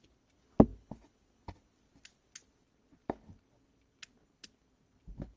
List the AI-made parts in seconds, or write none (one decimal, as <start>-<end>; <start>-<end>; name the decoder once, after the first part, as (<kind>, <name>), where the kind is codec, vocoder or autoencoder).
none